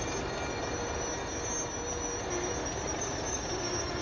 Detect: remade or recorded recorded